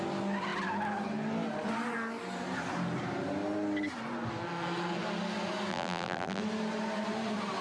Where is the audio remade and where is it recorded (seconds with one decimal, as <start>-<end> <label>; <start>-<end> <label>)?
0.0-5.7 recorded; 5.7-6.4 remade; 6.4-7.6 recorded